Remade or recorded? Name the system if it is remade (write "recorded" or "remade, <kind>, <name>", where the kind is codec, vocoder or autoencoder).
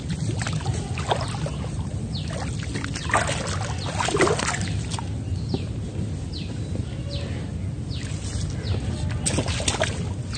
recorded